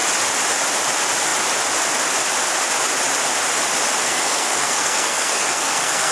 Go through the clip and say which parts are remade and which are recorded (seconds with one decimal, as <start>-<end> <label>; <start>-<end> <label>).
0.0-4.0 recorded; 4.0-6.1 remade